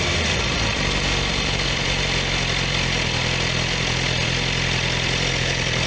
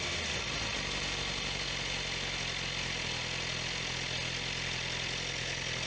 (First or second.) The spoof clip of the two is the first